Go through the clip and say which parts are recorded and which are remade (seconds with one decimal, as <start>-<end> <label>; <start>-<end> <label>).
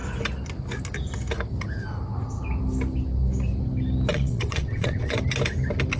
0.0-4.1 recorded; 4.1-5.2 remade; 5.2-6.0 recorded